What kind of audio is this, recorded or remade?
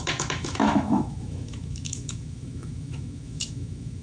remade